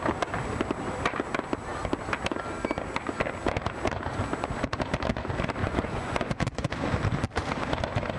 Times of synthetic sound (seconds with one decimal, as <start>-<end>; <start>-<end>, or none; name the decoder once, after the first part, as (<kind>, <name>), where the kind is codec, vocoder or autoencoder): 5.6-6.7 (vocoder, Vocos)